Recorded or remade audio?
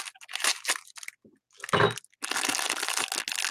recorded